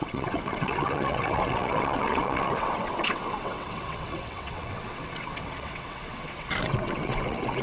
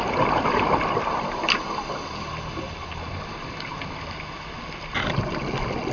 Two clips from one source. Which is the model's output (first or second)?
first